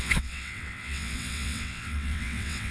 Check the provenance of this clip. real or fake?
fake